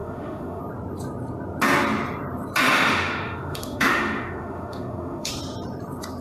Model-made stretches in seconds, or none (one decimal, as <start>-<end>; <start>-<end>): 0.0-0.6; 2.6-5.3